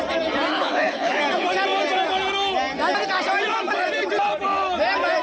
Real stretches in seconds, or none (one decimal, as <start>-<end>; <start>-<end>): 0.0-0.5; 1.2-5.2